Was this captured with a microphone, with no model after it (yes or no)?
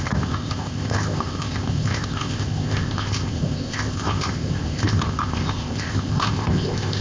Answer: no